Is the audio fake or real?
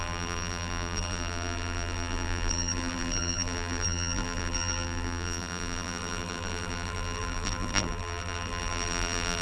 fake